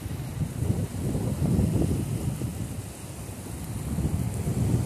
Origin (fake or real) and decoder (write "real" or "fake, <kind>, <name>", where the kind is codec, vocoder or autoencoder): real